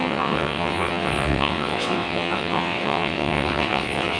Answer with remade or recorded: remade